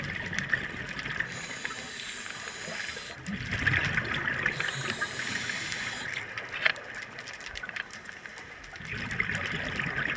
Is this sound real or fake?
real